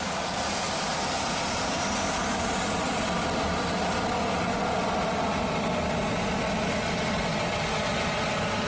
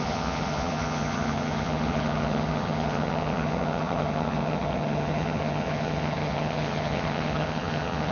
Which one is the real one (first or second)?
first